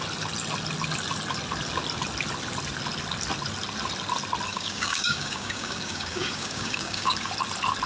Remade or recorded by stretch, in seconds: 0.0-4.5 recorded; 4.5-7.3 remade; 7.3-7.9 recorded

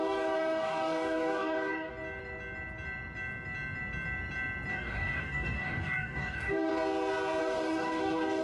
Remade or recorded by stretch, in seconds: 0.0-1.9 remade; 1.9-4.7 recorded; 4.7-6.7 remade; 6.7-7.4 recorded; 7.4-8.4 remade